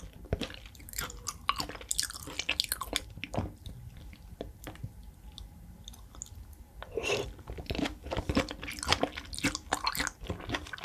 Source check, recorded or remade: recorded